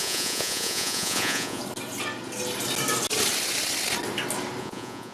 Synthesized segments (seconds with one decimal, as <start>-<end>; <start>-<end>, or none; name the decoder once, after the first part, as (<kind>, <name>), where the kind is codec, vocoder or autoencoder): 0.0-1.6 (vocoder, Vocos); 4.6-5.1